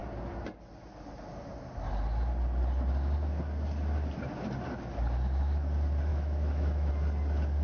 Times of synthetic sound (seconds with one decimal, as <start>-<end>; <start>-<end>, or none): 6.1-6.9